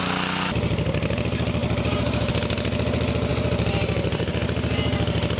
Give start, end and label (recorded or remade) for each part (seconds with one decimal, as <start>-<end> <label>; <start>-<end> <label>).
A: 0.0-1.6 recorded; 1.6-2.3 remade; 2.3-3.3 recorded; 3.3-4.3 remade; 4.3-5.4 recorded